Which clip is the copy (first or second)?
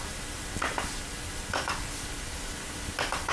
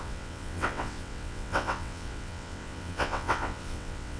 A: second